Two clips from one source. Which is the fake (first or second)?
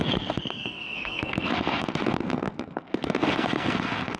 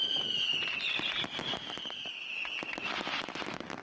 first